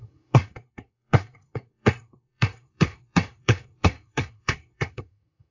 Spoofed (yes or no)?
yes